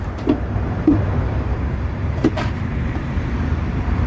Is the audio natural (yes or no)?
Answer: no